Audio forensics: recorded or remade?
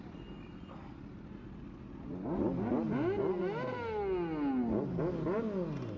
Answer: recorded